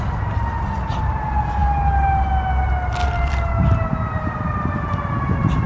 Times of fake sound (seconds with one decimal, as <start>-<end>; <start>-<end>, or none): none